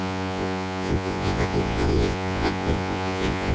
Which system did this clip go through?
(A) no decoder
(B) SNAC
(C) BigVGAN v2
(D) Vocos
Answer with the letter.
D